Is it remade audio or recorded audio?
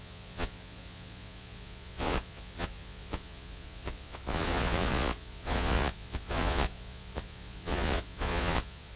remade